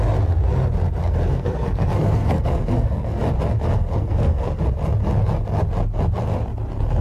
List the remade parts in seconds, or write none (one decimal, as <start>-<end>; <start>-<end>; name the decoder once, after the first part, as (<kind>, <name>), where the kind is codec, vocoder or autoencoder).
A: 1.0-3.2 (codec, SNAC); 3.7-4.6